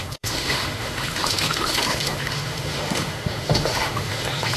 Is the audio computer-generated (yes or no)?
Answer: yes